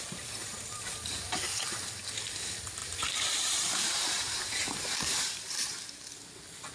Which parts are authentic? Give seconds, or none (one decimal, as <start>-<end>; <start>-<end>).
0.0-0.4; 2.1-2.8; 5.9-6.7

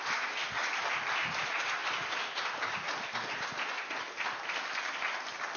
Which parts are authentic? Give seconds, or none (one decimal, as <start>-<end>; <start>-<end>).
0.0-5.6

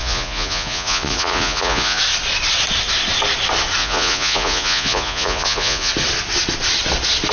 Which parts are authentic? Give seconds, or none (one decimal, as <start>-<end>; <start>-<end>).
2.0-3.8; 5.9-7.3